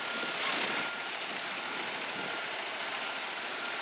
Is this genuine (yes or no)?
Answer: yes